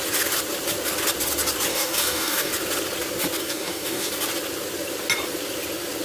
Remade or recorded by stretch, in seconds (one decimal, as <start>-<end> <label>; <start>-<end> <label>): 0.0-1.7 recorded; 1.7-2.5 remade; 2.5-3.4 recorded; 3.4-4.1 remade; 4.1-6.0 recorded